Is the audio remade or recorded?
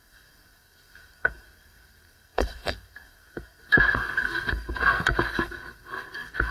remade